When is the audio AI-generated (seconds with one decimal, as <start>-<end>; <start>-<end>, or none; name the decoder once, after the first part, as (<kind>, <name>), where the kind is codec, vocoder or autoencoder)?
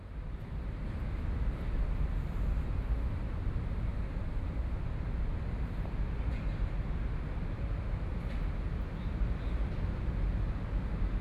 3.9-4.8 (vocoder, BigVGAN v2)